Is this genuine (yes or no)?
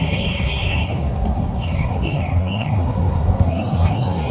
no